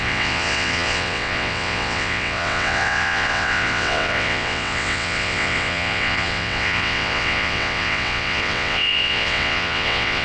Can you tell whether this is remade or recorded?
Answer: remade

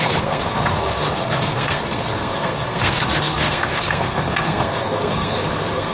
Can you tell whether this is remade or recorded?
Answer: remade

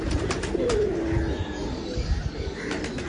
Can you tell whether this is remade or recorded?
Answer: recorded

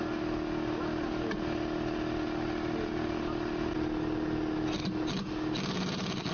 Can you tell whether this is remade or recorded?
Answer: recorded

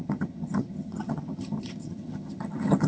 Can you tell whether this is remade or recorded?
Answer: remade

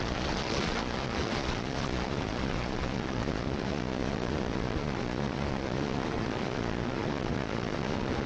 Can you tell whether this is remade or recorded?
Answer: remade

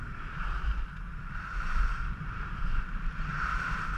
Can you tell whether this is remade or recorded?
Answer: remade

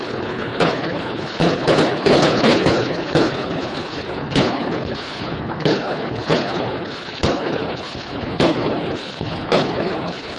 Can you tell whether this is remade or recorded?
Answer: remade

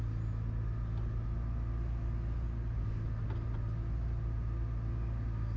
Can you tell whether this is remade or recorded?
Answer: recorded